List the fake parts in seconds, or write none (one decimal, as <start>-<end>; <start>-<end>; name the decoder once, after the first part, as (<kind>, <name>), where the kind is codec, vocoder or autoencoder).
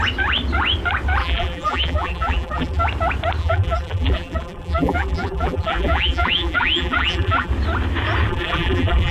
1.2-2.8 (vocoder, BigVGAN v2); 3.4-7.5; 8.3-9.1